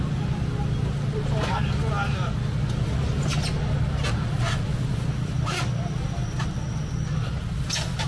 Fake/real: real